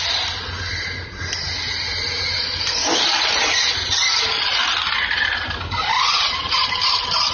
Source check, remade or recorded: recorded